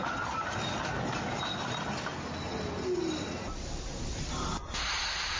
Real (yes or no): yes